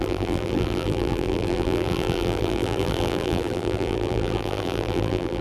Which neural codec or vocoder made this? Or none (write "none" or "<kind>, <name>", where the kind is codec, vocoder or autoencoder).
vocoder, BigVGAN v2